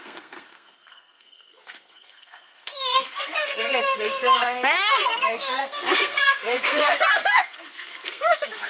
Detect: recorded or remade remade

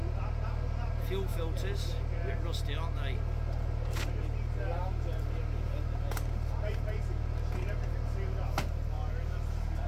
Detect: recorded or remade recorded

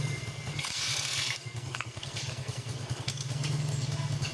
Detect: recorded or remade remade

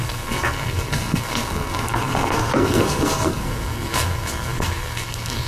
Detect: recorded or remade remade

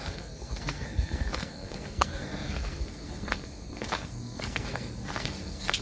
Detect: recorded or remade remade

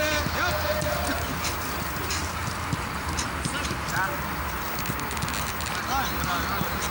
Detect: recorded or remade recorded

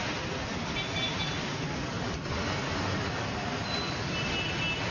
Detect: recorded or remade recorded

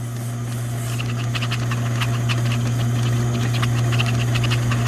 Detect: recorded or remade recorded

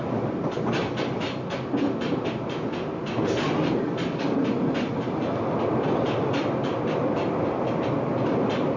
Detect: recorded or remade recorded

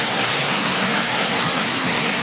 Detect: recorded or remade remade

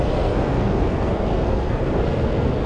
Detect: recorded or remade remade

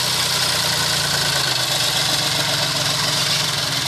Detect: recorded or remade recorded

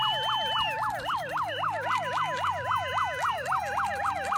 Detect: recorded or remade recorded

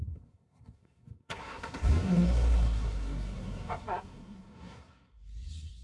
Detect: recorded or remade remade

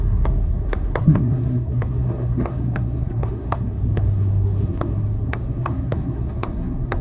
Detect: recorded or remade remade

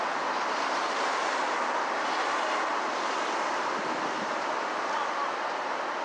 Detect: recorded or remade recorded